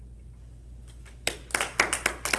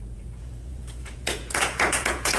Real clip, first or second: first